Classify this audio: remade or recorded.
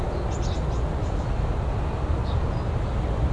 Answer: recorded